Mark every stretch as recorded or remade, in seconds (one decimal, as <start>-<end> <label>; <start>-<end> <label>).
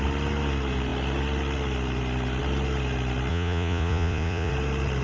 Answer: 0.0-3.3 recorded; 3.3-4.5 remade; 4.5-5.0 recorded